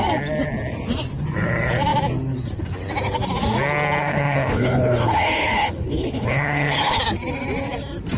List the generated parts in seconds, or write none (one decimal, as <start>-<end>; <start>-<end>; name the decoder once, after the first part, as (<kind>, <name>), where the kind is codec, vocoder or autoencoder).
4.0-7.0 (codec, HILCodec)